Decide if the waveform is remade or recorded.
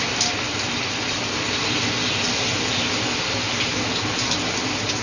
recorded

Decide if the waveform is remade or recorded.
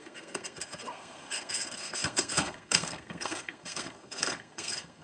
remade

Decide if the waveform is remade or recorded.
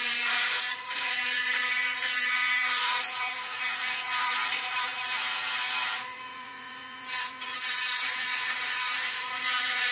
remade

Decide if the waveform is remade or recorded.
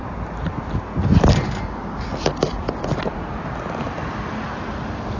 recorded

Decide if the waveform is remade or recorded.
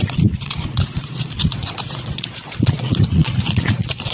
remade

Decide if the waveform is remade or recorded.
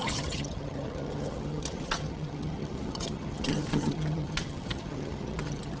remade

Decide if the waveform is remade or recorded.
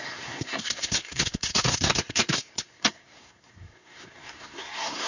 remade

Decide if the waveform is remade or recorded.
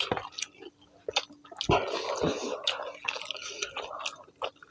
recorded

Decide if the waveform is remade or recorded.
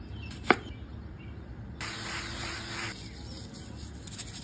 recorded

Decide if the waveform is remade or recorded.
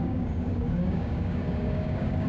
remade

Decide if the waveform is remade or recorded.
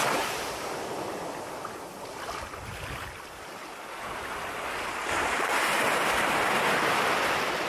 recorded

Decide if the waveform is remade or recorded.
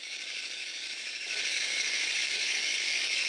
remade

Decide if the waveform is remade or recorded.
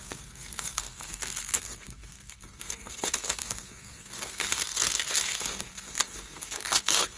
remade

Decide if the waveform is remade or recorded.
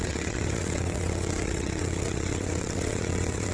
remade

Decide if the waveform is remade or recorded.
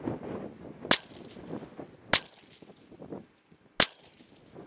recorded